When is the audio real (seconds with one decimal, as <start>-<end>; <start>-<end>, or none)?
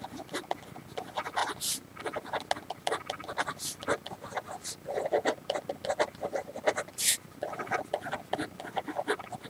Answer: 0.0-9.5